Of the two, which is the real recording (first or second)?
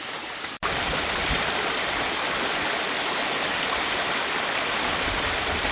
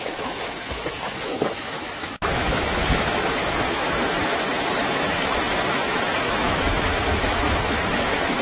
first